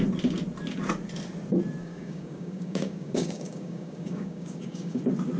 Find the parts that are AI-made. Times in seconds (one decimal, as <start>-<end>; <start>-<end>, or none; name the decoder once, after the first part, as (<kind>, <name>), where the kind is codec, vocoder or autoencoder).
1.8-5.0 (codec, DAC)

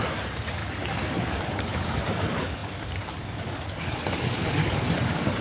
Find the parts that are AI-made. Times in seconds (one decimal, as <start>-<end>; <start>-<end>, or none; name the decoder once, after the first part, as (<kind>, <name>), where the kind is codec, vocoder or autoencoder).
0.0-0.6 (codec, DAC); 1.1-5.4